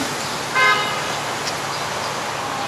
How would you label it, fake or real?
real